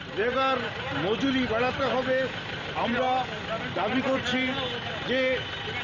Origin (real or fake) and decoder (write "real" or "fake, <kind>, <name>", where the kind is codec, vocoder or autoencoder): real